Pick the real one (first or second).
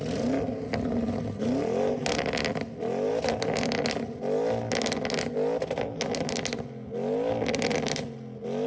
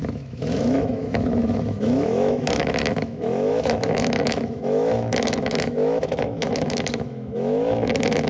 first